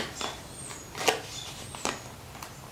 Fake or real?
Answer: real